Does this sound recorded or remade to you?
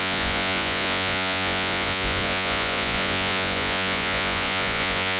remade